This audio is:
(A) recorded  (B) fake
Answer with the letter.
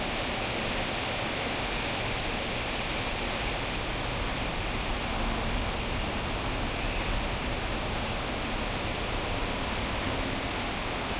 A